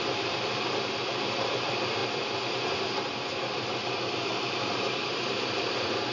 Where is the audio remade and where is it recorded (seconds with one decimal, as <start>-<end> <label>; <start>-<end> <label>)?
0.0-6.1 remade